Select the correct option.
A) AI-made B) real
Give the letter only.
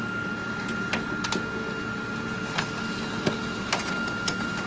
B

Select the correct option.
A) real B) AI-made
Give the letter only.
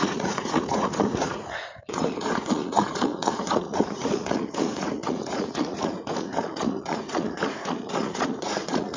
B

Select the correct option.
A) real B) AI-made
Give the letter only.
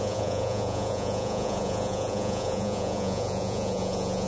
B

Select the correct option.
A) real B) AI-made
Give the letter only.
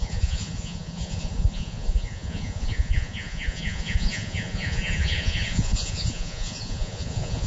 B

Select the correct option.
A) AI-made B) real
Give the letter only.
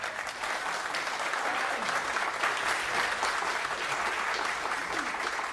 B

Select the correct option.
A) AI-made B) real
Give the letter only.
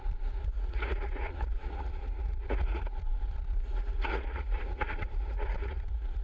A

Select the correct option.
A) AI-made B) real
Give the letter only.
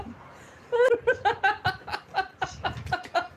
B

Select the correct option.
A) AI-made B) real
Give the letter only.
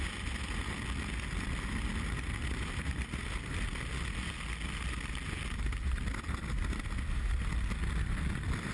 B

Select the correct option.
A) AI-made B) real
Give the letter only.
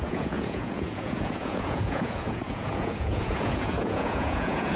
A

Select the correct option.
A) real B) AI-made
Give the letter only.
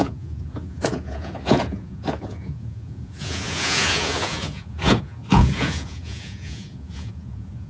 B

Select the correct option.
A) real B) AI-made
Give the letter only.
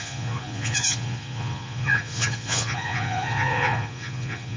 B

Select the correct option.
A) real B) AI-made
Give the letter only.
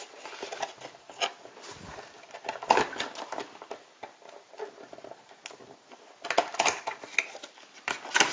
A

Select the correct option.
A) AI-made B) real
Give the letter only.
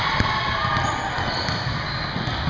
B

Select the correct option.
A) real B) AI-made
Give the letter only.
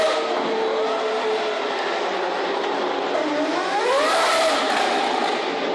A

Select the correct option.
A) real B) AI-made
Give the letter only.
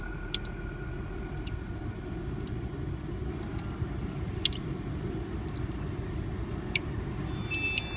A